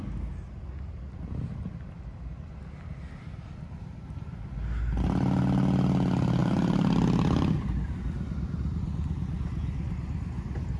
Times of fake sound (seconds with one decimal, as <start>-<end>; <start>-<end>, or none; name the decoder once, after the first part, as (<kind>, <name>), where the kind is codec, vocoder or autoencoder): 6.4-8.0 (vocoder, BigVGAN v2)